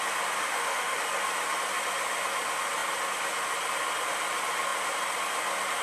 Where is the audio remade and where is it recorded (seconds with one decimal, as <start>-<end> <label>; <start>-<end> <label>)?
0.0-0.4 recorded; 0.4-1.0 remade; 1.0-5.8 recorded